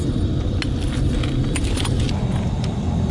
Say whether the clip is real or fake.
real